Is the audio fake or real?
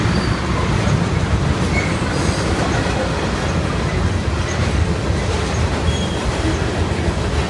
real